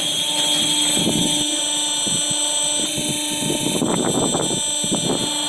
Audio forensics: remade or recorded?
recorded